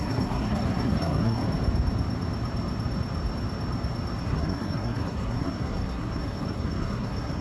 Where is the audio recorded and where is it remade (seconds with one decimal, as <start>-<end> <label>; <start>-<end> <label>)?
0.0-1.4 remade; 1.4-4.2 recorded; 4.2-7.4 remade